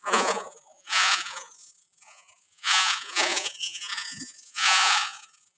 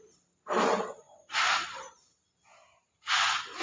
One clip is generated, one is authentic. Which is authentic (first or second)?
second